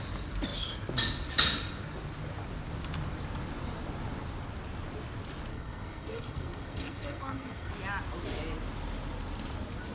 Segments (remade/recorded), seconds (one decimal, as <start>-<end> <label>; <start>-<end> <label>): 0.0-5.5 recorded; 5.5-7.7 remade; 7.7-9.9 recorded

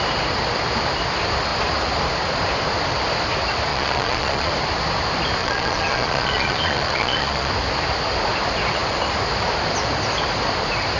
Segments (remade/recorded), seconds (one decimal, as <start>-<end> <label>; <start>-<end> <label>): 0.0-3.7 recorded; 3.7-4.5 remade; 4.5-5.4 recorded; 5.4-7.5 remade; 7.5-11.0 recorded

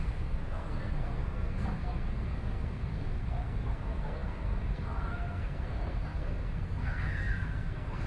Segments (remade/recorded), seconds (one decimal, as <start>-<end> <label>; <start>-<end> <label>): 0.0-8.1 remade

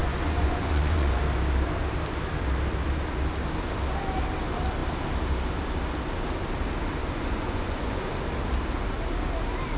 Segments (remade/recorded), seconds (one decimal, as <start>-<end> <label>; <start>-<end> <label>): 0.0-1.2 remade; 1.2-7.0 recorded; 7.0-8.1 remade; 8.1-9.8 recorded

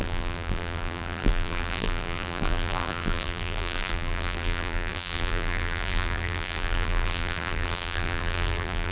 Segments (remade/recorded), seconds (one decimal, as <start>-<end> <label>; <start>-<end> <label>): 0.0-8.9 remade

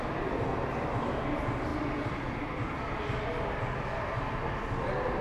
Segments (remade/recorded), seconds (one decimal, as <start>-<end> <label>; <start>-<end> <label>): 0.0-5.2 recorded

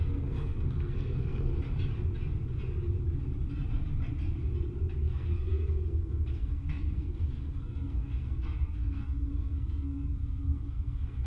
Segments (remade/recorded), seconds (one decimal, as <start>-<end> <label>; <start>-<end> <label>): 0.0-1.5 remade; 1.5-5.0 recorded; 5.0-11.3 remade

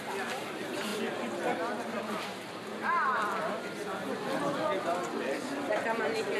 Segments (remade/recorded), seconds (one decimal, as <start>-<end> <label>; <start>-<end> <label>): 0.0-6.4 recorded